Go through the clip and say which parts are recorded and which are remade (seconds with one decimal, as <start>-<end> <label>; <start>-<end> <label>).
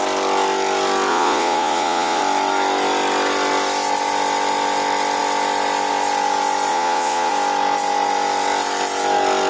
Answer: 0.0-1.1 recorded; 1.1-2.2 remade; 2.2-6.7 recorded; 6.7-7.3 remade; 7.3-9.5 recorded